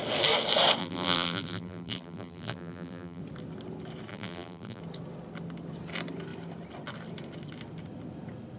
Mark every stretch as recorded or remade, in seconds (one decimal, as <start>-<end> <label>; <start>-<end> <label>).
0.0-0.8 recorded; 0.8-3.2 remade; 3.2-4.1 recorded; 4.1-4.8 remade; 4.8-8.6 recorded